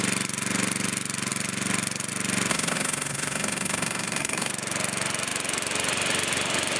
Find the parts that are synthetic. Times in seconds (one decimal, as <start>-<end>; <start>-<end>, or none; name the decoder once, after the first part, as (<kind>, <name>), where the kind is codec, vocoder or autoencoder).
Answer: 2.5-4.5 (codec, SNAC)